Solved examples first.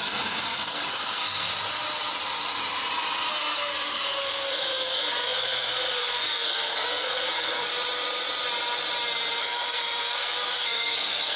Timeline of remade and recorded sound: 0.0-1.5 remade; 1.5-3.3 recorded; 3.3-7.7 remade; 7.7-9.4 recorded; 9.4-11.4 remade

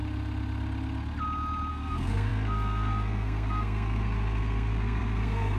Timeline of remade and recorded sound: 0.0-1.7 recorded; 1.7-5.6 remade

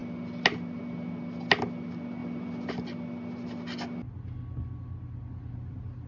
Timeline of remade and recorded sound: 0.0-6.1 recorded